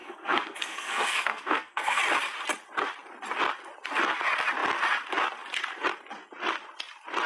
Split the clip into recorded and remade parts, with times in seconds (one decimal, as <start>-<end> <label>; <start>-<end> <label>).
0.0-2.0 remade; 2.0-7.3 recorded